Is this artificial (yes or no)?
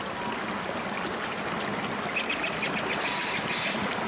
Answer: no